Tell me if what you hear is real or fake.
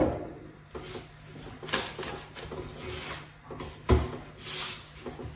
real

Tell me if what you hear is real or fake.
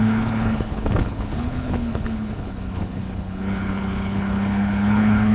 fake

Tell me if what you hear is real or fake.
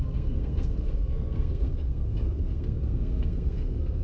fake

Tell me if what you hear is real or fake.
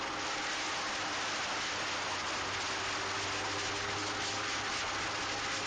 real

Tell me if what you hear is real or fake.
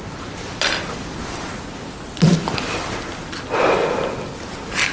real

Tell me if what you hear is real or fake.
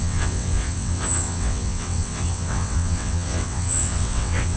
fake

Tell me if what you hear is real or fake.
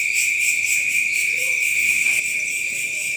fake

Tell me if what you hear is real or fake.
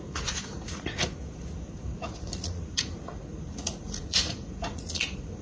fake